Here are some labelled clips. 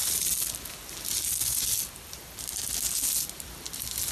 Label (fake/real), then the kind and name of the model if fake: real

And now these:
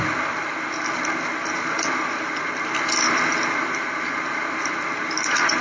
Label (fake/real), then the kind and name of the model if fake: real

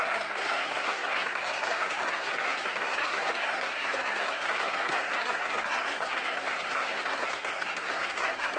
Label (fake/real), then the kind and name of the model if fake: fake, codec, SNAC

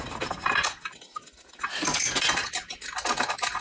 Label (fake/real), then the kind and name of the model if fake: real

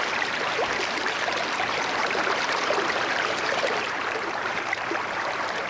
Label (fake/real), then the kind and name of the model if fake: fake, vocoder, BigVGAN v2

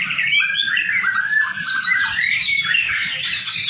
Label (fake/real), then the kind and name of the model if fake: fake, vocoder, BigVGAN v2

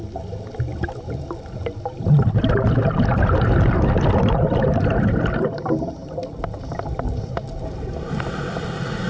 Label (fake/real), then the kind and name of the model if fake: real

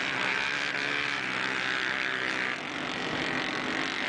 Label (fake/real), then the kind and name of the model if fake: real